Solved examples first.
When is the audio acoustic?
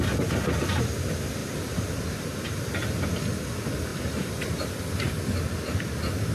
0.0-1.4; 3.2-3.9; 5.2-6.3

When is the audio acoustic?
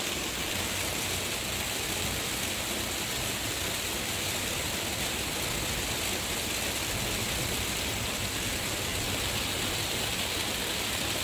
0.0-11.2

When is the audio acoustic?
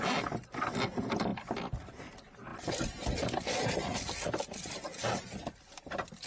0.0-1.3; 2.0-2.5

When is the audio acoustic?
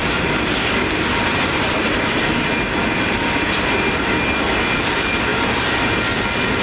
2.2-5.3; 5.9-6.6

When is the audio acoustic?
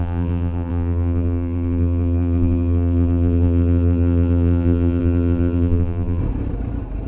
6.2-7.1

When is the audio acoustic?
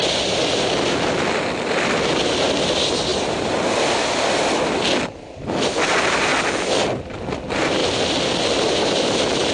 6.3-7.3; 7.8-9.0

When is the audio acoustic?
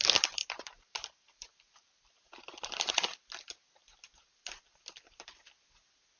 0.0-0.4; 3.3-3.8; 5.0-6.2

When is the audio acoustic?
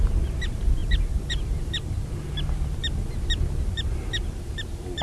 0.0-0.8; 2.1-5.0